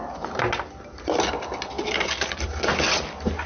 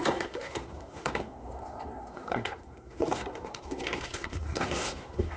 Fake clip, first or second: second